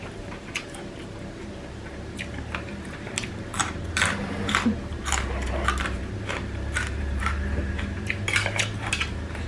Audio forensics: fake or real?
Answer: fake